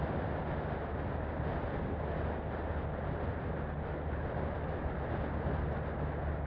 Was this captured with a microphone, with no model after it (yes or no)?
yes